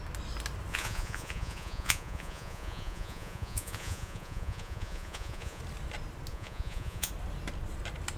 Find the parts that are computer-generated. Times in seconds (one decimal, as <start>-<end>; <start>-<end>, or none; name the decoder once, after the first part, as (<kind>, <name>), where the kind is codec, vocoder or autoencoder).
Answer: 0.7-5.6 (vocoder, Vocos); 6.3-7.1